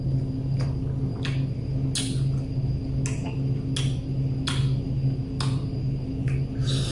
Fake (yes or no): no